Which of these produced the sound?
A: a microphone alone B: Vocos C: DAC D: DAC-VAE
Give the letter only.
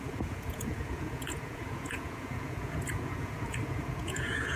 B